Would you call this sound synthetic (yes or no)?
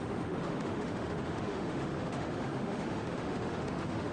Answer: yes